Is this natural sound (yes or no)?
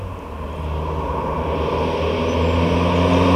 yes